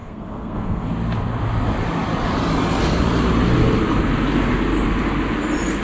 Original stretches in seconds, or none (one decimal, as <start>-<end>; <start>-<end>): 0.9-5.8